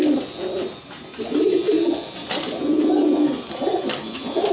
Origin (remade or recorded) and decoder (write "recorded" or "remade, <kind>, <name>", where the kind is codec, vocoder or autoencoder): recorded